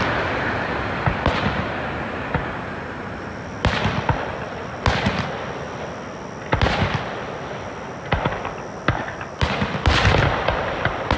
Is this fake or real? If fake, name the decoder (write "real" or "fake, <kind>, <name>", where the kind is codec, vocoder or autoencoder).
real